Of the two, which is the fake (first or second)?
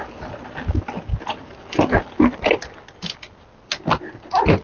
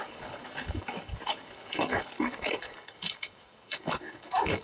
second